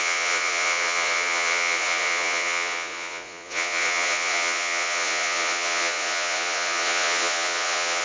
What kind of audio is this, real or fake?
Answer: fake